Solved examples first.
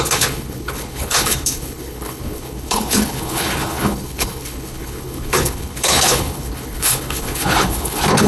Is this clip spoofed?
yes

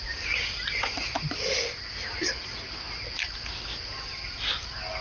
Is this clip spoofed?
no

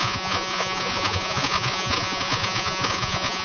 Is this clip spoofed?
yes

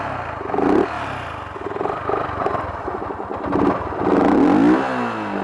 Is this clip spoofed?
no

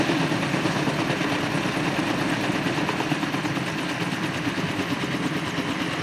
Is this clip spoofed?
no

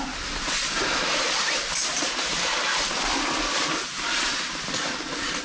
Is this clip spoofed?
no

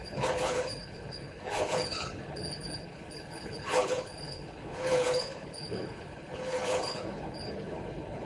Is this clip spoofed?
yes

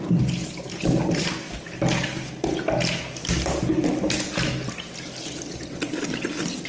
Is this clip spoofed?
no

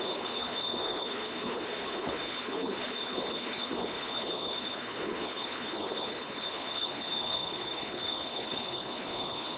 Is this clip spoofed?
yes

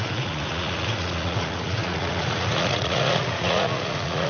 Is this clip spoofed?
yes